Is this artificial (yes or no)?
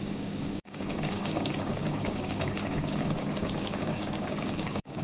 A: yes